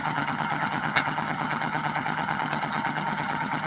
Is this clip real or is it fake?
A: fake